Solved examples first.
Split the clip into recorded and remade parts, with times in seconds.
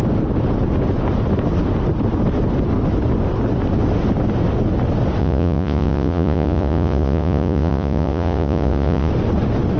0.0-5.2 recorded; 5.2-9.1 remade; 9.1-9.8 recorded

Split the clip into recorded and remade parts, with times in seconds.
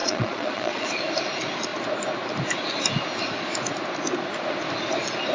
0.0-0.9 remade; 0.9-5.3 recorded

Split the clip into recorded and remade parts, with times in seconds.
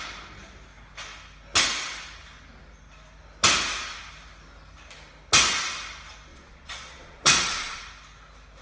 0.0-6.3 recorded; 6.3-7.8 remade; 7.8-8.6 recorded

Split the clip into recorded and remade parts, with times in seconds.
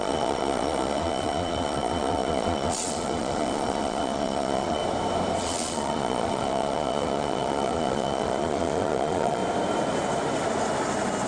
0.0-4.8 remade; 4.8-5.4 recorded; 5.4-9.4 remade; 9.4-11.3 recorded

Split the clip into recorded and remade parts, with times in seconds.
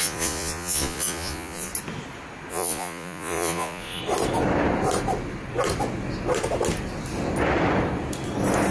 0.0-1.7 remade; 1.7-2.5 recorded; 2.5-4.0 remade; 4.0-8.7 recorded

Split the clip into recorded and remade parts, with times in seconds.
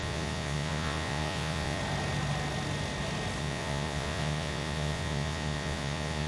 0.0-1.8 remade; 1.8-3.4 recorded; 3.4-6.3 remade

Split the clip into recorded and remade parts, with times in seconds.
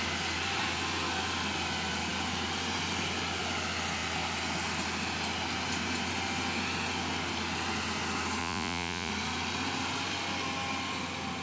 0.0-8.4 recorded; 8.4-9.1 remade; 9.1-11.4 recorded